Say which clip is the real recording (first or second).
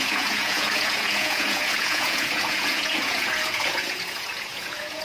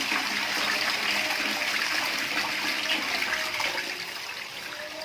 second